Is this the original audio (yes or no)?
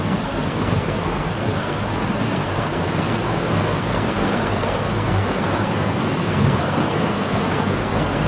no